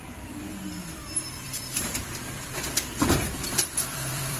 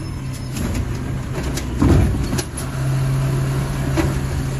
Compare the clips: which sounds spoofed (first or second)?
first